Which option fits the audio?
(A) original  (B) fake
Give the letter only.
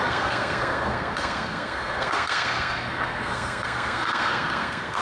B